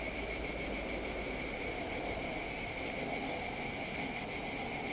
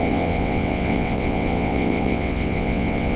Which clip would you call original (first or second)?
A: first